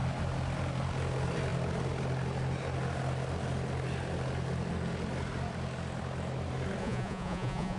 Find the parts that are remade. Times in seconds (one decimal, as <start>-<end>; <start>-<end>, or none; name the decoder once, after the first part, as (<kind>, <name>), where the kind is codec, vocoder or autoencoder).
6.8-7.8 (vocoder, Vocos)